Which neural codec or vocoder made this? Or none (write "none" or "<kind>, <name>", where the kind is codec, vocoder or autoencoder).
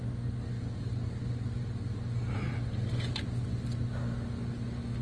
none